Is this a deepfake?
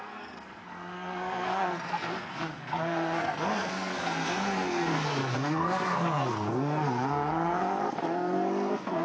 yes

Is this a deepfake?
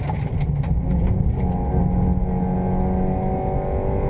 no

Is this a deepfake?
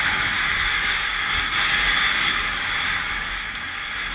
yes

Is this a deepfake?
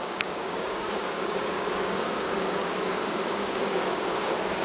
yes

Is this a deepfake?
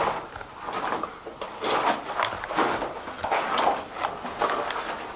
no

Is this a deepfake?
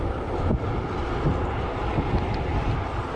no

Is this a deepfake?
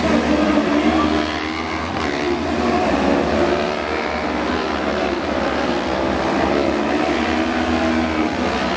no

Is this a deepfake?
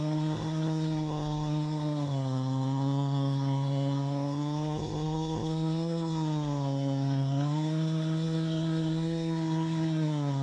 yes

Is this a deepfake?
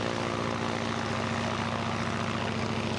no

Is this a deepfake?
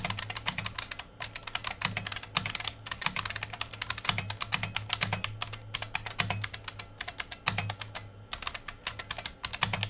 no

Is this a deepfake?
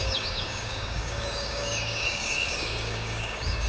yes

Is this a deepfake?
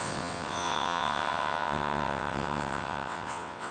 yes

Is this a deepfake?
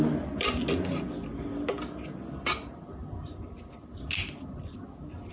no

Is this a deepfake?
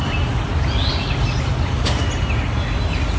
no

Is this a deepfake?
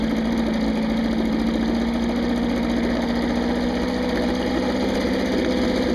no